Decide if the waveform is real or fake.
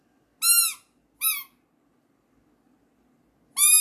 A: real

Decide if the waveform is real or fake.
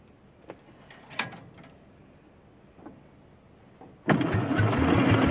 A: real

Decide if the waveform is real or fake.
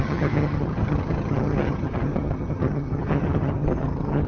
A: fake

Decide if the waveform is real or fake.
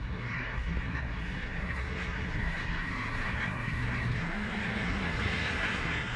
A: fake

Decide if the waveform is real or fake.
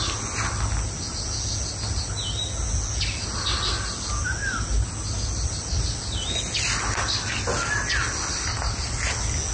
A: real